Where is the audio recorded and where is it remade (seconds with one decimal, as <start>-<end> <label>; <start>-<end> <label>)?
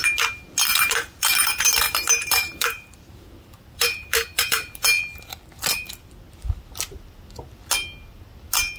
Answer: 0.0-0.7 recorded; 0.7-4.7 remade; 4.7-8.8 recorded